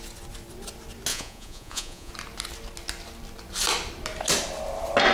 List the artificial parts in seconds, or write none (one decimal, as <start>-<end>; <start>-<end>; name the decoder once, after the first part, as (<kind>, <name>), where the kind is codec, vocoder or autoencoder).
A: 1.1-2.1 (vocoder, Vocos)